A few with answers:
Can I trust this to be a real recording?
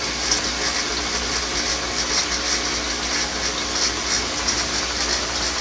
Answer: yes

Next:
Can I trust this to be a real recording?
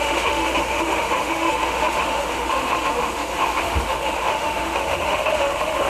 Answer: no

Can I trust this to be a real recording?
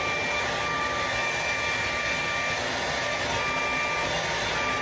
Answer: yes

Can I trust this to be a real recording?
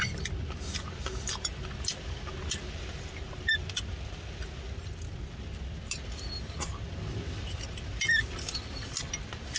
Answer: yes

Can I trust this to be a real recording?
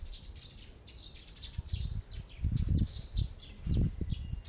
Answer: yes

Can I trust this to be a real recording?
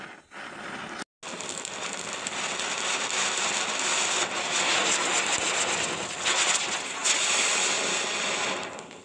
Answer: yes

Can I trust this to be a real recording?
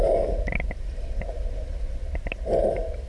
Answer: yes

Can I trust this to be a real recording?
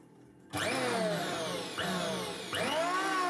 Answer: yes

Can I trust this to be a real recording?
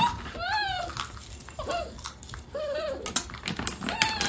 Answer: yes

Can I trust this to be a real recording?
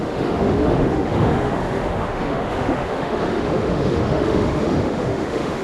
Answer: no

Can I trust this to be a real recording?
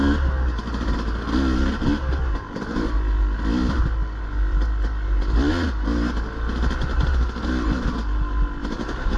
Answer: yes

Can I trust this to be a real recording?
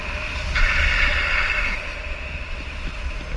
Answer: yes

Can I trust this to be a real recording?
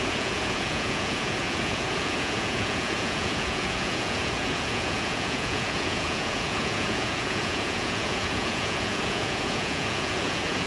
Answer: no